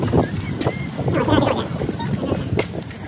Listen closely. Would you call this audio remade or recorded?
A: recorded